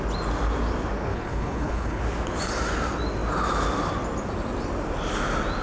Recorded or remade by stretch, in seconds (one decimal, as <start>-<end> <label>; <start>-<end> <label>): 0.0-1.1 recorded; 1.1-2.0 remade; 2.0-5.6 recorded